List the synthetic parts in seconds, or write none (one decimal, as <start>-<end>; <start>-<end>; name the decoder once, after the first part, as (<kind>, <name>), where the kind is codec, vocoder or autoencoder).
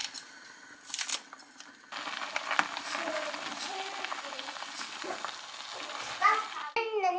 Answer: none